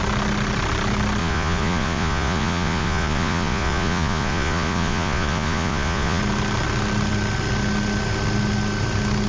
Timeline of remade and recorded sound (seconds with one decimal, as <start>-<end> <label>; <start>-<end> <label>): 0.0-1.2 recorded; 1.2-6.2 remade; 6.2-9.3 recorded